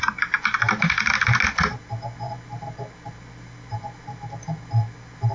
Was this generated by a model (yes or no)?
no